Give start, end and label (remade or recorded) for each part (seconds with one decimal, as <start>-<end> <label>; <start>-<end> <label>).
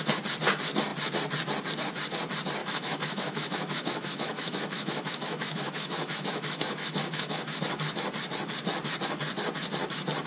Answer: 0.0-2.6 recorded; 2.6-7.6 remade; 7.6-10.3 recorded